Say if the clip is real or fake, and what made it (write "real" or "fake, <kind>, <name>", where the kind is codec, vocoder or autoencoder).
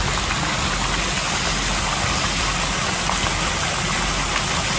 real